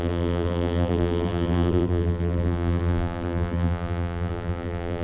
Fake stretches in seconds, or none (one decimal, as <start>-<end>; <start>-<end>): 0.0-5.0

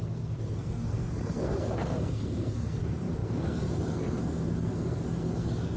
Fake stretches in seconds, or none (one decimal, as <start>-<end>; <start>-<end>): 0.0-5.8

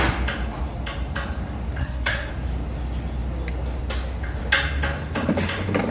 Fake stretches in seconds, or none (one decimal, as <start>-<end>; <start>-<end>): 1.8-2.3

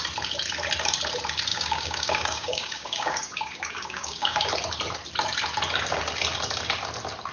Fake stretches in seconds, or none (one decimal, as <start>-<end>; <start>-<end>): 1.5-4.5

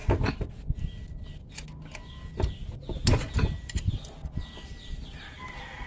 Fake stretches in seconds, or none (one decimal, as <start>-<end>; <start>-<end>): 3.1-4.2; 5.3-5.9

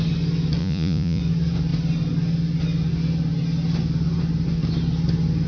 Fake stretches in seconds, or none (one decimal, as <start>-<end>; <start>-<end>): 0.6-1.2

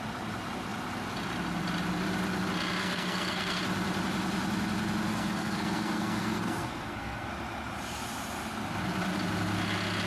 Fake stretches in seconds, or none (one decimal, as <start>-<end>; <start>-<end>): 2.8-3.6; 5.1-7.3